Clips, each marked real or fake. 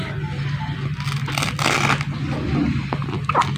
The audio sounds real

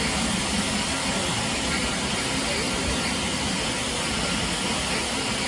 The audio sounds real